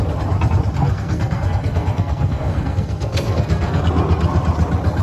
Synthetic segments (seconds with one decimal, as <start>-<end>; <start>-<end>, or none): 0.8-3.8